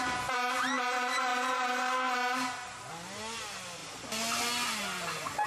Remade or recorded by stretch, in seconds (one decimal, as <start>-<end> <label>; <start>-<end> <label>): 0.0-5.5 recorded